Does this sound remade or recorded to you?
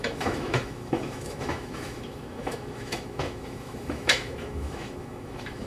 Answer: remade